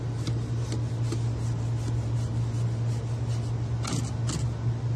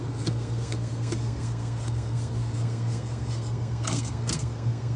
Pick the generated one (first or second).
second